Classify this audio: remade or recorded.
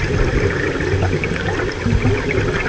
recorded